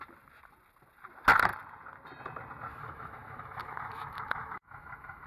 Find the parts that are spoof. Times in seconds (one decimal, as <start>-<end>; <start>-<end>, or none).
2.7-5.3